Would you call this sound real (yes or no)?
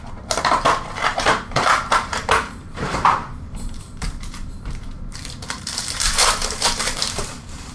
no